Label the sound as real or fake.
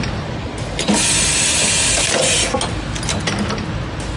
real